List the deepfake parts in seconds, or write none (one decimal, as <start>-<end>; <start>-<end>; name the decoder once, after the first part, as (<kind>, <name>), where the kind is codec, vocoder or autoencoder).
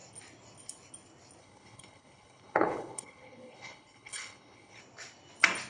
1.4-4.8 (codec, HILCodec)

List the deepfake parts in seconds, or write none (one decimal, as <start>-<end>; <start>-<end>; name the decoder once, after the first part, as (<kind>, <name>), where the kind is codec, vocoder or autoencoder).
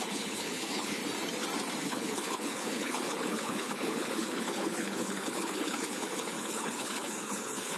0.0-1.0 (codec, HILCodec); 1.8-7.8